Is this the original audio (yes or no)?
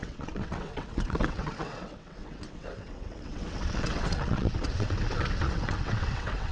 no